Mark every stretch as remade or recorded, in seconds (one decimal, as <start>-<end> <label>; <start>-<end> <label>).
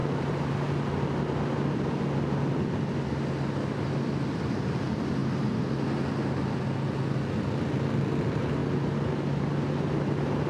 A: 0.0-0.5 remade; 0.5-10.5 recorded